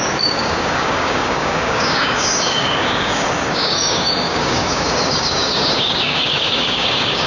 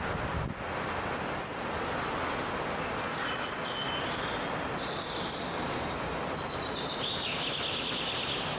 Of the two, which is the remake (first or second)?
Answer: first